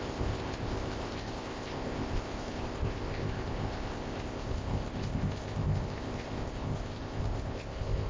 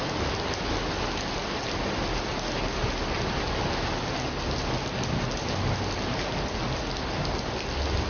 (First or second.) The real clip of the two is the second